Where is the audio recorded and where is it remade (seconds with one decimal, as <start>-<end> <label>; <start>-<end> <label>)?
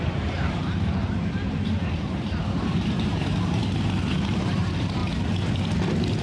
0.0-5.0 remade; 5.0-6.2 recorded